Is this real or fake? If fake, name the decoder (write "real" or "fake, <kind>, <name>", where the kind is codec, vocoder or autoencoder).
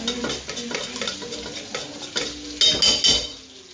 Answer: real